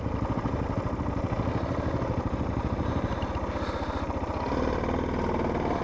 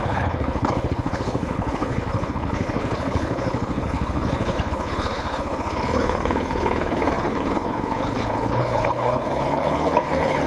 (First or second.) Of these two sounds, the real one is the first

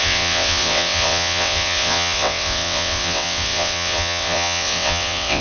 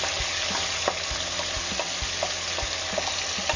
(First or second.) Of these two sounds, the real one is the second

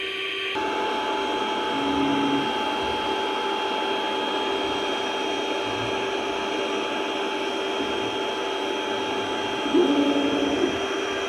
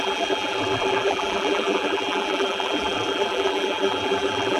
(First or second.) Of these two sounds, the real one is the first